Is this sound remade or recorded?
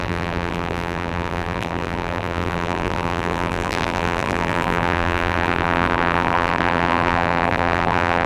remade